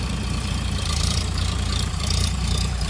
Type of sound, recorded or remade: remade